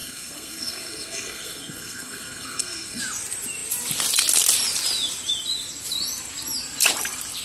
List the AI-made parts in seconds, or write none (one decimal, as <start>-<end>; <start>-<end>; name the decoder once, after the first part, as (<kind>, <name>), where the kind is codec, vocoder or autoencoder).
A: 0.0-3.0 (codec, SNAC)